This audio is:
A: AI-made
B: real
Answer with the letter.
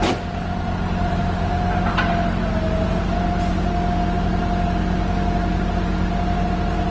B